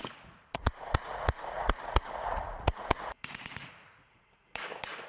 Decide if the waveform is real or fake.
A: fake